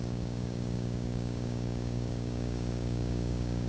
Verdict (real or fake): fake